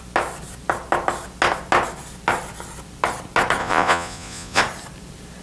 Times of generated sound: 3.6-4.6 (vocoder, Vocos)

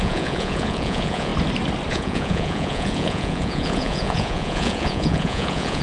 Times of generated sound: 0.0-1.3 (vocoder, Vocos); 1.9-5.8